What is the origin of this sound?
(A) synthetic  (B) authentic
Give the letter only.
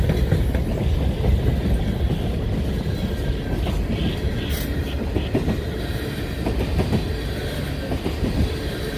B